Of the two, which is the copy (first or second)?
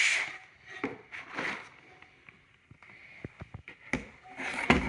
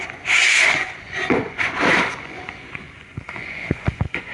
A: second